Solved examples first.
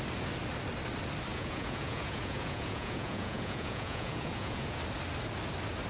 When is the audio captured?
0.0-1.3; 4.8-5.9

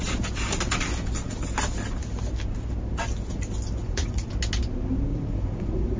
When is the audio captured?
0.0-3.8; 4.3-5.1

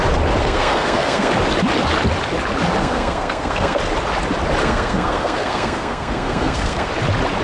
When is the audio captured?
0.0-0.4; 1.3-2.8; 3.8-4.6; 6.9-7.4